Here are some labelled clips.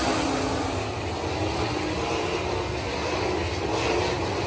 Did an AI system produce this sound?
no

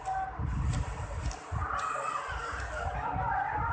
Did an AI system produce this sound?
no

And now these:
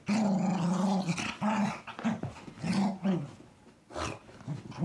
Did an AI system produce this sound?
no